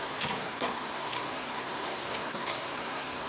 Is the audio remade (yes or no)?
yes